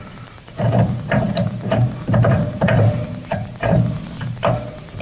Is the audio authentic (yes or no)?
no